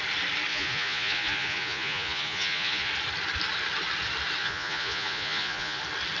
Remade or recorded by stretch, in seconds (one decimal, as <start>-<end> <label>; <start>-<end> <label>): 0.0-0.5 recorded; 0.5-2.9 remade; 2.9-4.4 recorded; 4.4-5.8 remade; 5.8-6.2 recorded